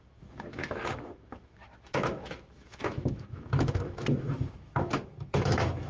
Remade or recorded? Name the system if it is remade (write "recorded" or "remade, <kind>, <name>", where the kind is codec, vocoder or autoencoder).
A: remade, autoencoder, DAC-VAE